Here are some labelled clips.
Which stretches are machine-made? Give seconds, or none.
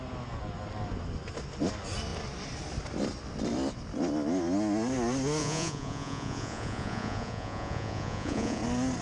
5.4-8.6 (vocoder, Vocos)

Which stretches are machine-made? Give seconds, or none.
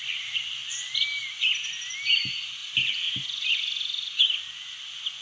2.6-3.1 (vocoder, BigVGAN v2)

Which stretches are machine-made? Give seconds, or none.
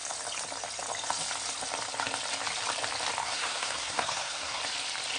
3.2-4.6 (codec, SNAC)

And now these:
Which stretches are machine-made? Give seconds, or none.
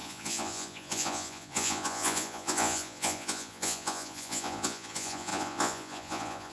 0.0-6.5 (vocoder, Vocos)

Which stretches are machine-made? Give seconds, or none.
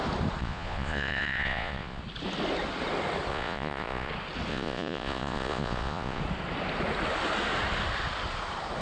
0.4-2.0 (vocoder, Vocos); 3.3-4.1; 4.5-6.2